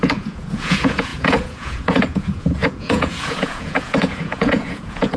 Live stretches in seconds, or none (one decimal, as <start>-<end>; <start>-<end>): none